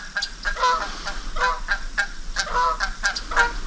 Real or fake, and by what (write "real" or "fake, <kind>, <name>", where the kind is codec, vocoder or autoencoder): real